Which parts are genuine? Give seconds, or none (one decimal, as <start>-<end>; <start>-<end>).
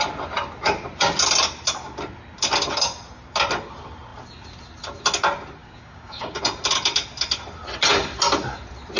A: 0.0-5.6; 6.4-9.0